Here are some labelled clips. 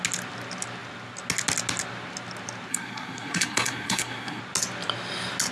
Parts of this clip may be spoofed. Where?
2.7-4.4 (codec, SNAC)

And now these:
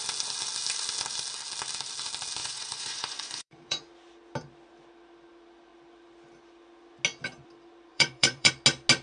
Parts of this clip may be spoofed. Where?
2.4-3.8 (vocoder, Vocos); 7.9-8.5

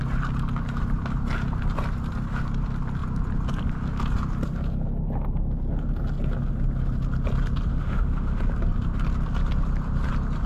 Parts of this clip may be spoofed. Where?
7.7-8.4 (autoencoder, DAC-VAE)

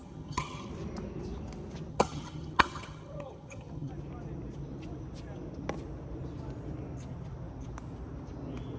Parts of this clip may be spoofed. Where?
0.0-0.7 (vocoder, HiFi-GAN); 1.9-3.9

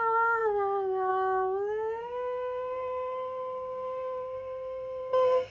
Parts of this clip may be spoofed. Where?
2.0-5.5 (codec, SNAC)